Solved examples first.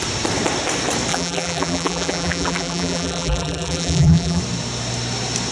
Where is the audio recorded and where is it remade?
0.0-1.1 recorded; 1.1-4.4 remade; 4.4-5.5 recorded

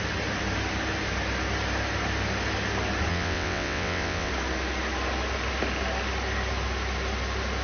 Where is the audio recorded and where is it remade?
0.0-3.1 recorded; 3.1-4.3 remade; 4.3-7.6 recorded

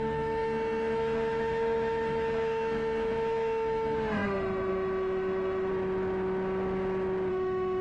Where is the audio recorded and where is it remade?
0.0-5.7 remade; 5.7-7.3 recorded; 7.3-7.8 remade

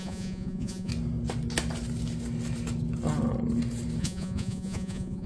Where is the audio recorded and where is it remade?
0.0-0.9 remade; 0.9-4.0 recorded; 4.0-5.3 remade